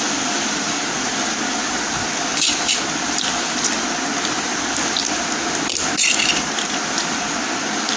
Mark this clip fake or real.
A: real